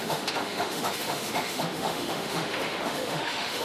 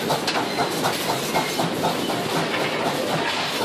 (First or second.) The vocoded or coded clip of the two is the first